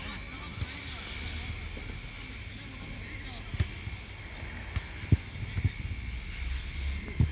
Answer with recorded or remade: recorded